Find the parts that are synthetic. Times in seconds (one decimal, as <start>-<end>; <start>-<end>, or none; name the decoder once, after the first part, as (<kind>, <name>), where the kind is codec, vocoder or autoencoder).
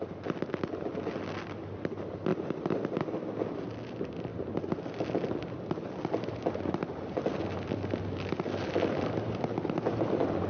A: none